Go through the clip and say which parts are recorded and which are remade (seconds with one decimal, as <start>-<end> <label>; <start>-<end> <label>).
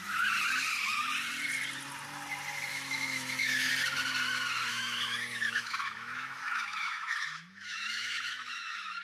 0.0-2.7 recorded; 2.7-3.7 remade; 3.7-4.7 recorded; 4.7-9.0 remade